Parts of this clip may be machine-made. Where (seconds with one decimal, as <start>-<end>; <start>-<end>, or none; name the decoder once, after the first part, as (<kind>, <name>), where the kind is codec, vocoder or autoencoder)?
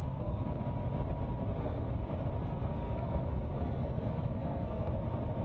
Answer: 0.0-0.6 (codec, SNAC); 1.4-1.9; 2.4-4.9